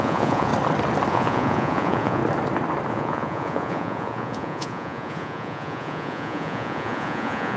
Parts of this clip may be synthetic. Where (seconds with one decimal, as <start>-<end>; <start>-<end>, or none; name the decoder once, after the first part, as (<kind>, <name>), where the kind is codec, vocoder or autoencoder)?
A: 0.0-0.5 (vocoder, Vocos); 1.1-2.2; 2.9-7.6